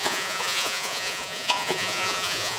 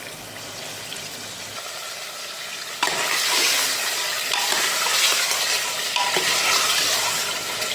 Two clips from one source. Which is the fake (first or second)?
first